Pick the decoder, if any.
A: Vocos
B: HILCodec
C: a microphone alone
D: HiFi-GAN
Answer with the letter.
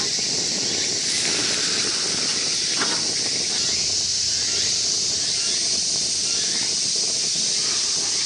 C